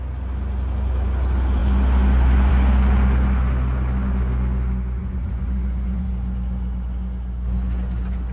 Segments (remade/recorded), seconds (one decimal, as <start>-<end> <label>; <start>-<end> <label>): 0.0-5.0 recorded; 5.0-6.1 remade; 6.1-8.3 recorded

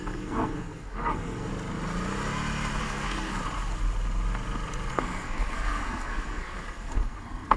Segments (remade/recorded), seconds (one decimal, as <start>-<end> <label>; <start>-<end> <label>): 0.0-1.5 remade; 1.5-2.8 recorded; 2.8-3.4 remade; 3.4-4.9 recorded; 4.9-7.6 remade

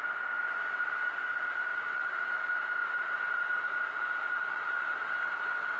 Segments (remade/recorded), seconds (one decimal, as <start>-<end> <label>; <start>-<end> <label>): 0.0-1.7 recorded; 1.7-2.4 remade; 2.4-4.5 recorded; 4.5-5.8 remade

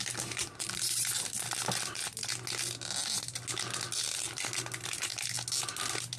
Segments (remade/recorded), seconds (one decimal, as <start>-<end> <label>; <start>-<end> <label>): 0.0-6.2 recorded

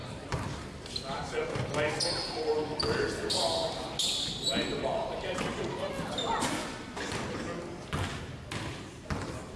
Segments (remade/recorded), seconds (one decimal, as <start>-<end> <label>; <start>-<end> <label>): 0.0-1.3 remade; 1.3-6.6 recorded; 6.6-7.2 remade; 7.2-9.6 recorded

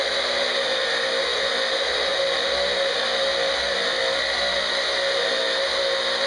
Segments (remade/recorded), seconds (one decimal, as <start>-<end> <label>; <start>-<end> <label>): 0.0-6.3 recorded

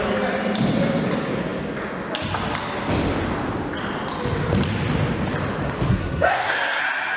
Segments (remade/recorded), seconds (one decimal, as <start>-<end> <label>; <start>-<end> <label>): 0.0-5.9 recorded; 5.9-6.8 remade; 6.8-7.2 recorded

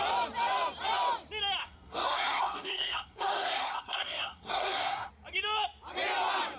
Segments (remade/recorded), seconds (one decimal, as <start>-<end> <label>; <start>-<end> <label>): 0.0-1.6 recorded; 1.6-5.1 remade; 5.1-6.6 recorded